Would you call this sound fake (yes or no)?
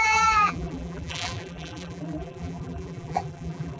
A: yes